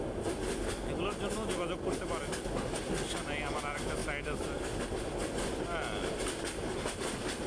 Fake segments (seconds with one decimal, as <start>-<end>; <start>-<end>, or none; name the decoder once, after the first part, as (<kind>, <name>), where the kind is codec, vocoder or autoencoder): none